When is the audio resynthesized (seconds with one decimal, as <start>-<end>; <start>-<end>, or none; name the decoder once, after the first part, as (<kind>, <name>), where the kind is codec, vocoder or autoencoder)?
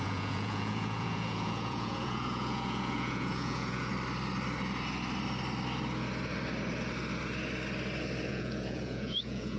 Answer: 0.0-3.9 (vocoder, Vocos); 8.3-9.6